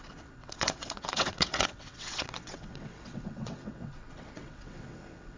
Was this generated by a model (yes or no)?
yes